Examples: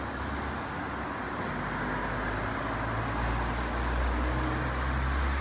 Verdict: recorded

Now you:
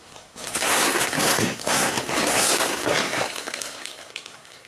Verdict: remade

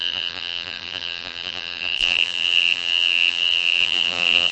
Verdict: remade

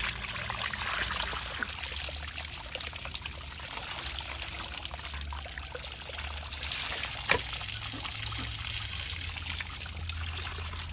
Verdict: recorded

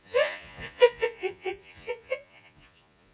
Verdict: remade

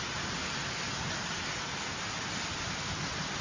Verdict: recorded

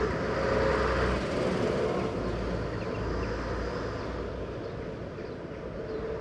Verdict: recorded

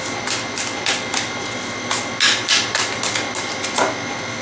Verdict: recorded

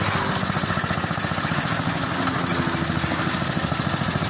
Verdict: recorded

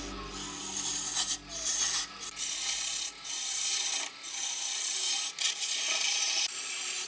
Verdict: recorded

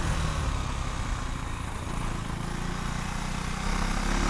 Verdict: recorded